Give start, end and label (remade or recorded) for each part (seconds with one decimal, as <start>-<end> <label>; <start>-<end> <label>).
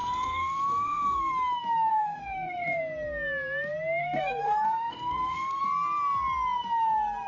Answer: 0.0-1.3 remade; 1.3-1.9 recorded; 1.9-2.8 remade; 2.8-4.0 recorded; 4.0-5.6 remade; 5.6-7.3 recorded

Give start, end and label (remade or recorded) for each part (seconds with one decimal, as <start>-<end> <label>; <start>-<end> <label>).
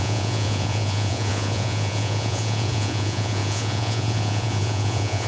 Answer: 0.0-5.3 remade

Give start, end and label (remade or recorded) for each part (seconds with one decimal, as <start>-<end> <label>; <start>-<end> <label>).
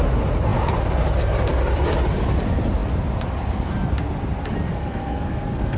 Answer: 0.0-4.7 recorded; 4.7-5.8 remade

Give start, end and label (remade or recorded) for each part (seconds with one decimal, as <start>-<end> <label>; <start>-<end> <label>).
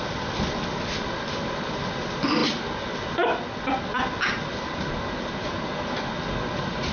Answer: 0.0-6.9 recorded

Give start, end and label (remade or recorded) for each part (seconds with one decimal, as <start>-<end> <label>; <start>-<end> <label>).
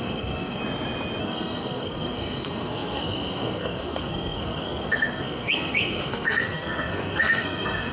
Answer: 0.0-0.6 remade; 0.6-1.2 recorded; 1.2-7.9 remade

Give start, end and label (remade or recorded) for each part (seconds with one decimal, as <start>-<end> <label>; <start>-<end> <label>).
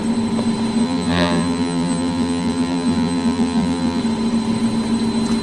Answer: 0.0-0.8 recorded; 0.8-4.0 remade; 4.0-5.4 recorded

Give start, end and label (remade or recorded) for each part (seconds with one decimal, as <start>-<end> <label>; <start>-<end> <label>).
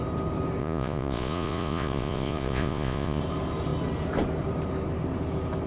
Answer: 0.0-0.6 recorded; 0.6-3.2 remade; 3.2-5.7 recorded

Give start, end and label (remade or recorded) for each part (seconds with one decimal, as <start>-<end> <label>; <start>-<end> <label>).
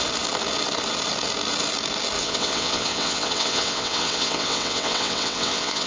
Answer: 0.0-2.2 recorded; 2.2-5.9 remade